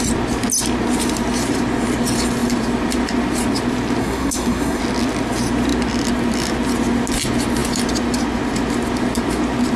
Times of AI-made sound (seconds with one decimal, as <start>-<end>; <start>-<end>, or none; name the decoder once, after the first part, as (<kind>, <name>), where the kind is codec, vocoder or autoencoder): 4.0-4.8 (codec, SNAC)